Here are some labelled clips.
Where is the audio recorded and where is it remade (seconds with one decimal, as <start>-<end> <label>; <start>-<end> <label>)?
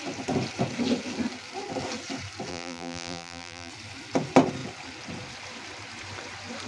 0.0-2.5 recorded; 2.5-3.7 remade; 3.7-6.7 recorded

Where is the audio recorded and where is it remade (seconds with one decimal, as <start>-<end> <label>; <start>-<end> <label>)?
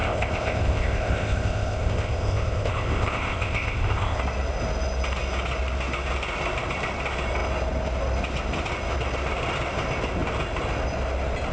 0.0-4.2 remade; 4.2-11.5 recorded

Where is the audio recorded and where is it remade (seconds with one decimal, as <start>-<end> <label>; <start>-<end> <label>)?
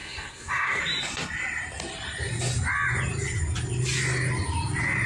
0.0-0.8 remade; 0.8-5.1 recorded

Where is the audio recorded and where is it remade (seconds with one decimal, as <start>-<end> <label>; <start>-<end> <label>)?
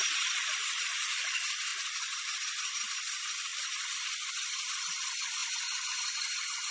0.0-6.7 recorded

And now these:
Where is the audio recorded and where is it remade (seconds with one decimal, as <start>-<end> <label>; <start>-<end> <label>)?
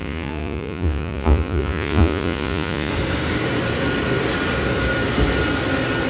0.0-2.9 remade; 2.9-6.1 recorded